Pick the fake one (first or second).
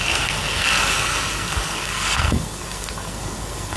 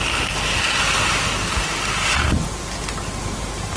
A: first